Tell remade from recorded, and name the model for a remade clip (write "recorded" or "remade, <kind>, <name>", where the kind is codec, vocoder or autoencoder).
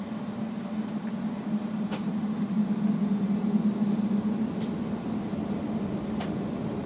recorded